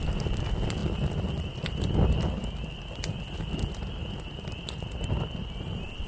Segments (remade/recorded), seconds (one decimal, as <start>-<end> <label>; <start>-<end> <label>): 0.0-6.1 recorded